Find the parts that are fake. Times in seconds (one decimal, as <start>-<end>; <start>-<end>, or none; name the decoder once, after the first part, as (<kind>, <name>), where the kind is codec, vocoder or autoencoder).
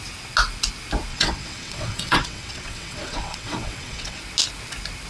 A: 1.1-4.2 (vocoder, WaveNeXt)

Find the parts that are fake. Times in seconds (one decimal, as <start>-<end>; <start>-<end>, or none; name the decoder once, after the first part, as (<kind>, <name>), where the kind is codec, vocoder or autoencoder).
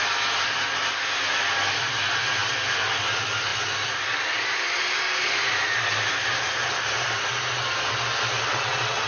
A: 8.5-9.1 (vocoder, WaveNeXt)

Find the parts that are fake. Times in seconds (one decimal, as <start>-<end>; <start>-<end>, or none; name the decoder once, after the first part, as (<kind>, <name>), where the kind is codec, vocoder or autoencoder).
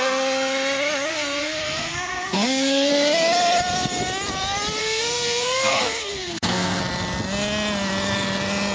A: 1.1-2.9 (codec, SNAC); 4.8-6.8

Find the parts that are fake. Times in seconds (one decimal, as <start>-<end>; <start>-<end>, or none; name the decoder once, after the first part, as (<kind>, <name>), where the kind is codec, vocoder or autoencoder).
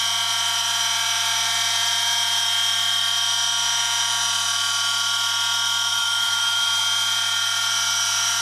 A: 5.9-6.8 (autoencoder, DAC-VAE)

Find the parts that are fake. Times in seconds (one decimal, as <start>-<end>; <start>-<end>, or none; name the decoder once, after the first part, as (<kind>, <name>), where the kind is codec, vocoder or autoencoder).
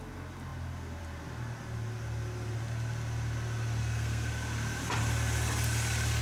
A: 3.8-4.3 (codec, SNAC)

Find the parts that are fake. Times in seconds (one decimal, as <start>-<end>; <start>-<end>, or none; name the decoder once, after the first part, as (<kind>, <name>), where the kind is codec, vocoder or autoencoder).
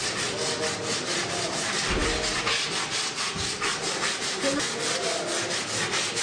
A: none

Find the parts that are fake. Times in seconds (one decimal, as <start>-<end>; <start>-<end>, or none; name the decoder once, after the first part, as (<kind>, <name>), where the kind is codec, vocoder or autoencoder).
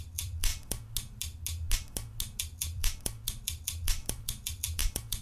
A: 0.0-0.5 (vocoder, BigVGAN v2); 2.4-5.2